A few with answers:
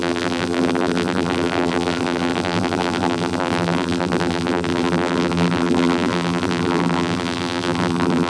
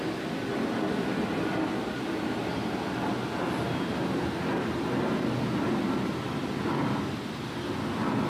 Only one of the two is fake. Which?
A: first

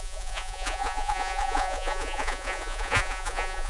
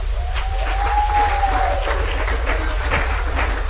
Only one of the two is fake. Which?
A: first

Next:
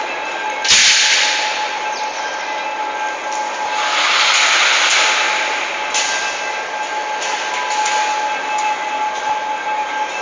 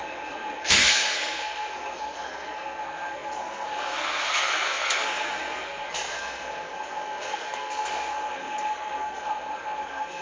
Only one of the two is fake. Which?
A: second